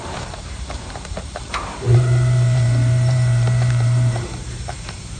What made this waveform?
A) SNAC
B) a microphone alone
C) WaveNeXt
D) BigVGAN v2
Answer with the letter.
D